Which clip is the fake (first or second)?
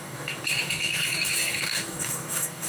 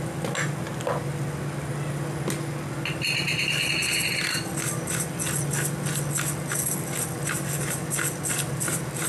first